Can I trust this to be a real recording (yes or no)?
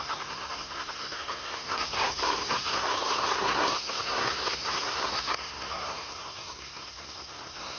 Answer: no